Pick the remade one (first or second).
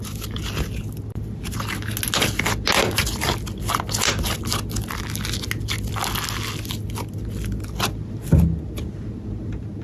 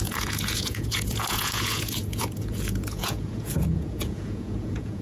second